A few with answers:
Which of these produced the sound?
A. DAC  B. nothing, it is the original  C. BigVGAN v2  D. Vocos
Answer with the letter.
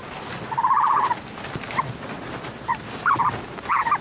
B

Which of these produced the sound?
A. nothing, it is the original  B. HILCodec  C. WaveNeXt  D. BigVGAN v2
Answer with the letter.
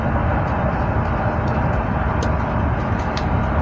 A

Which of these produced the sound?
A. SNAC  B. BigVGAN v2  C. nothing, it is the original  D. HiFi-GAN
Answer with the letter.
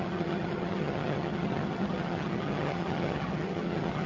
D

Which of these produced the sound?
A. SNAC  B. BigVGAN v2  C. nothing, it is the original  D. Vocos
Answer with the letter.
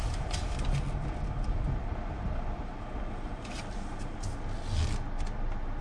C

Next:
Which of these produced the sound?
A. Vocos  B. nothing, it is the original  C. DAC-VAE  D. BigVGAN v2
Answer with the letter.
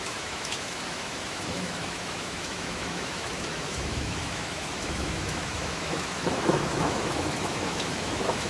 C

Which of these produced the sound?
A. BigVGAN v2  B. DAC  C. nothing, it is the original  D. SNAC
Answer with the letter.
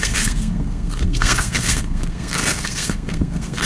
D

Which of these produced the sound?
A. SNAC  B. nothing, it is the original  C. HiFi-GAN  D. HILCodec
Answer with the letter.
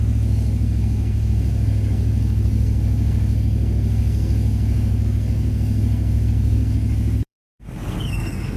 A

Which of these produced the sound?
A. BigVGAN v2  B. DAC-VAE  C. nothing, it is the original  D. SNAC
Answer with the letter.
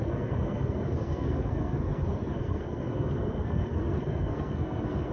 D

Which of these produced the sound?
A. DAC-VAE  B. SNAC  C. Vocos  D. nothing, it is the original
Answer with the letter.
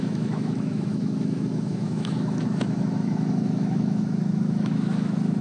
A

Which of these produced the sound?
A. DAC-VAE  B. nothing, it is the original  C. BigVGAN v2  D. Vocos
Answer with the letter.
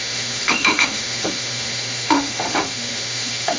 A